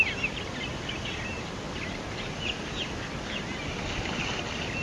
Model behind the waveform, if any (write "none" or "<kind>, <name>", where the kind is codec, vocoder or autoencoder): none